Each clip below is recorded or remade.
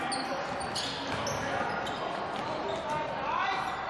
recorded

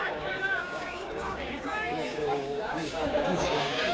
remade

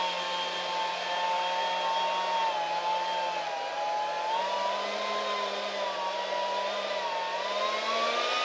recorded